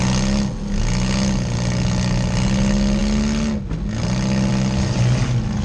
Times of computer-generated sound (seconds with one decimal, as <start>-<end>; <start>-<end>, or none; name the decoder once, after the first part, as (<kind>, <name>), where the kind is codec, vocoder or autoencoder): none